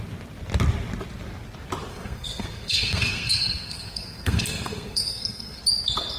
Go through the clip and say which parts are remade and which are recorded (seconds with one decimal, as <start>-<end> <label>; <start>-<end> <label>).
0.0-1.9 recorded; 1.9-5.6 remade; 5.6-6.2 recorded